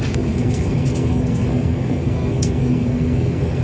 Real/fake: fake